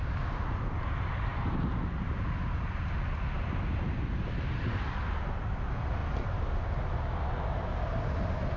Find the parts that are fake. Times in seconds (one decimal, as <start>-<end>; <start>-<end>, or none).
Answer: none